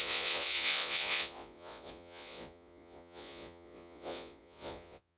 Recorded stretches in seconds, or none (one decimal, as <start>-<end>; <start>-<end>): none